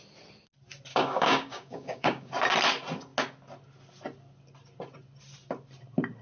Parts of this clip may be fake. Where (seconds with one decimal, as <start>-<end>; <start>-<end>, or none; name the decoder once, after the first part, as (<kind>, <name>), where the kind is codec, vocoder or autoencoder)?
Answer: 0.9-2.3 (codec, DAC)